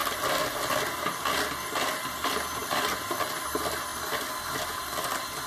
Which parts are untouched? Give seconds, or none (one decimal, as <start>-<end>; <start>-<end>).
0.0-2.0; 3.9-4.4